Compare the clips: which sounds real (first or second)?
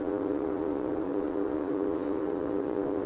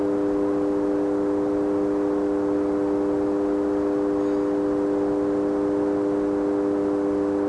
second